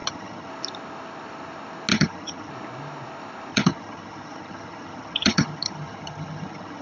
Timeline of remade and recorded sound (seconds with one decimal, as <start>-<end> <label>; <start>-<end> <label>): 0.0-0.5 remade; 0.5-1.9 recorded; 1.9-2.5 remade; 2.5-3.5 recorded; 3.5-6.8 remade